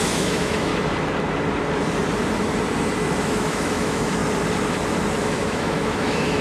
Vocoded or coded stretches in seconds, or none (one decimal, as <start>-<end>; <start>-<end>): 0.0-0.7; 3.2-4.2; 5.2-6.4